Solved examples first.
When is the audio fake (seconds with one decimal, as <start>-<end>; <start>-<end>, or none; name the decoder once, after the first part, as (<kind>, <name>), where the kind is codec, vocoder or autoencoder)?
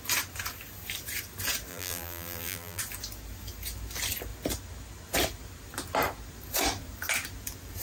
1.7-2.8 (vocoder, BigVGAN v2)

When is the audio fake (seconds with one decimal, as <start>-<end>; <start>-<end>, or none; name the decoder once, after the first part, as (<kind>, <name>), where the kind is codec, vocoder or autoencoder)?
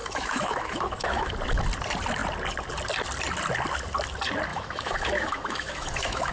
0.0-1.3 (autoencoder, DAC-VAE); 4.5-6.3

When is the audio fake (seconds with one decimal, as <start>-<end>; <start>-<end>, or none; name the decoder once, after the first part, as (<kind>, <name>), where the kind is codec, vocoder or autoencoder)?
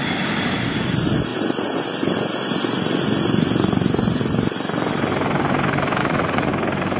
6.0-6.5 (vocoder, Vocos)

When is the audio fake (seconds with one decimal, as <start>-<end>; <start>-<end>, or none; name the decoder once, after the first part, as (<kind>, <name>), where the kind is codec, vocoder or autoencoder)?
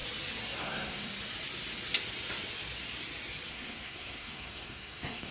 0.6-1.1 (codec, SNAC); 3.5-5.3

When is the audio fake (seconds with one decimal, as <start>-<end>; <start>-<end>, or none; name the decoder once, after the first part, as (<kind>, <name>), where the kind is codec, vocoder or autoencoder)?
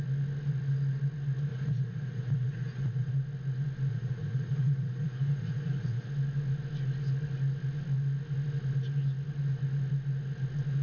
1.5-3.1 (vocoder, Vocos); 3.9-6.1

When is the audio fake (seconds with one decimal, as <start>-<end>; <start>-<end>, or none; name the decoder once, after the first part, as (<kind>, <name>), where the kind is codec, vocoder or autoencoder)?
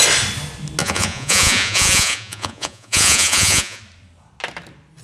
0.8-3.8 (vocoder, Vocos)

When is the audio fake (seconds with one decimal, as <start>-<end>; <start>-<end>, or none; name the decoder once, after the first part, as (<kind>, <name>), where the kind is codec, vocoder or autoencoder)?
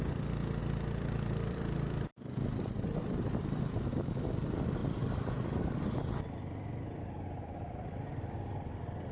0.6-3.6 (vocoder, BigVGAN v2); 4.8-8.7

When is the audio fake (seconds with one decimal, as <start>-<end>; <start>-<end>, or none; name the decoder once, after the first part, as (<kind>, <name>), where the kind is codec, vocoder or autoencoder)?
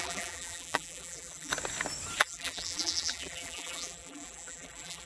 0.0-1.5 (vocoder, BigVGAN v2); 2.2-5.1